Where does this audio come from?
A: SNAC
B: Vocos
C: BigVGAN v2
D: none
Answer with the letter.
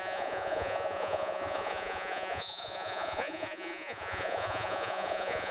B